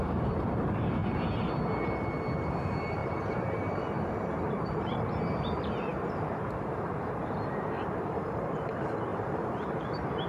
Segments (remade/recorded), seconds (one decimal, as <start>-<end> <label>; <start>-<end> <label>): 0.0-1.0 remade; 1.0-2.6 recorded; 2.6-10.3 remade